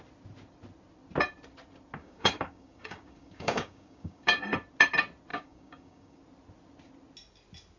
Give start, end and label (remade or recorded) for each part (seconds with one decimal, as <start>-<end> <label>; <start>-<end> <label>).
0.0-2.0 recorded; 2.0-4.4 remade; 4.4-5.3 recorded; 5.3-6.2 remade; 6.2-7.8 recorded

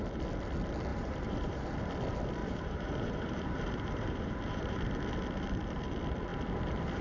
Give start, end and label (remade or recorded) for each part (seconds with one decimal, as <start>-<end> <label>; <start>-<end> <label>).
0.0-0.9 recorded; 0.9-1.8 remade; 1.8-2.4 recorded; 2.4-4.8 remade; 4.8-7.0 recorded